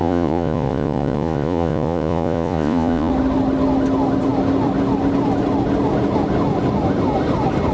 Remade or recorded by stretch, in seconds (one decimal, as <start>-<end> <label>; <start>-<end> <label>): 0.0-3.1 remade; 3.1-7.7 recorded